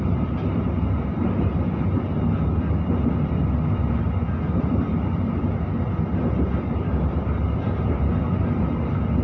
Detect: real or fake real